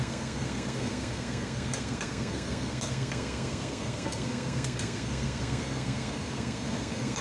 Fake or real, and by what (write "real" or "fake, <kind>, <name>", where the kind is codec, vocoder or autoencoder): fake, codec, SNAC